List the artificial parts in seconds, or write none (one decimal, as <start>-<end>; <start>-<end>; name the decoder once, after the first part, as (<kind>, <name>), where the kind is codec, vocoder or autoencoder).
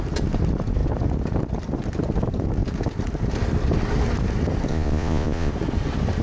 4.7-5.5 (vocoder, Vocos)